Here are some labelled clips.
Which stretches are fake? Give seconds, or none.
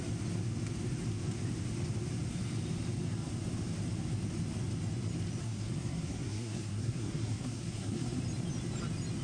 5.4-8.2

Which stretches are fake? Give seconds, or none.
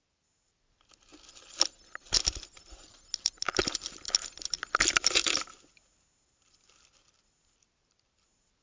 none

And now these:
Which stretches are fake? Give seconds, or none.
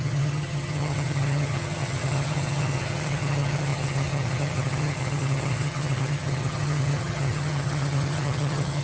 0.0-8.8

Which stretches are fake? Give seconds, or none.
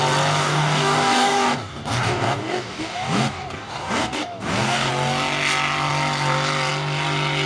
0.4-4.9